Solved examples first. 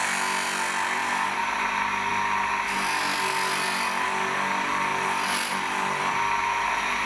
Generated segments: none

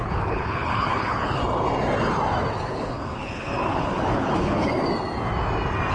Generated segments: 0.0-1.4 (codec, HILCodec); 2.5-4.7

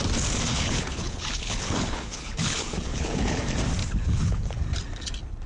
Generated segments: 0.5-3.4 (codec, HILCodec); 3.8-4.4

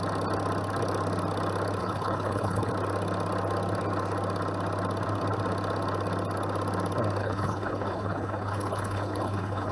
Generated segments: 1.8-2.7 (codec, HILCodec); 7.2-9.7

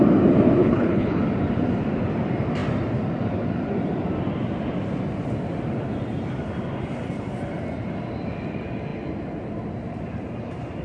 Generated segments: 0.6-1.2 (codec, HILCodec)

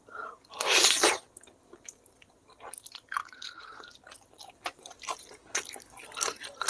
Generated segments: 3.2-3.8 (codec, HILCodec); 5.4-5.9

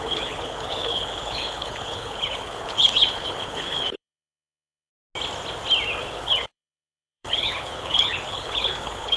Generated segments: 0.0-4.9 (codec, HILCodec); 6.0-9.2